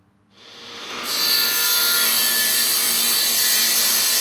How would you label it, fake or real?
real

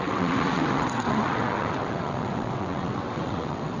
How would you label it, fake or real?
fake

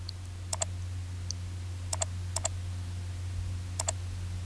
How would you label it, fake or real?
real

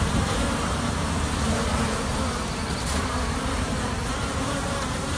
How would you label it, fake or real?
fake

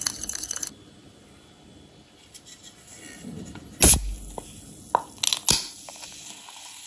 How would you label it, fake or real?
real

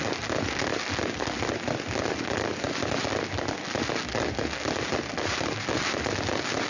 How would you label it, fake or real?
real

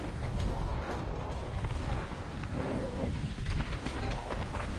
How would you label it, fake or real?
fake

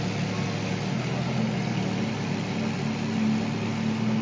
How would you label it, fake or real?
real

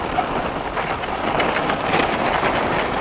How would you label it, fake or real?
real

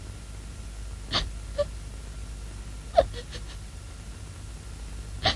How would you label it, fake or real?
real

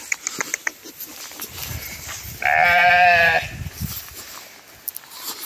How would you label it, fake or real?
real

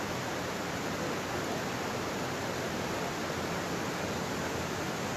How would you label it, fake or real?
real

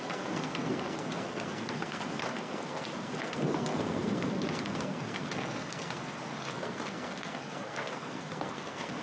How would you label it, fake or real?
fake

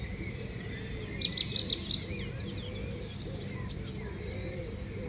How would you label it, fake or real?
real